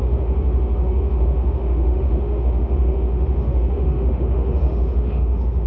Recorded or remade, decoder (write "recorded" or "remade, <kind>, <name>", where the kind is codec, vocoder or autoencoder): remade, autoencoder, DAC-VAE